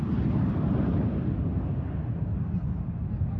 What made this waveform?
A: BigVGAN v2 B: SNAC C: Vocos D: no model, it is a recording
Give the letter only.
D